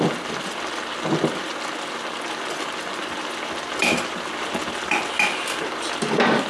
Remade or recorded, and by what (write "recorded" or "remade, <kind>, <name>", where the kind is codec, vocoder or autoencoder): recorded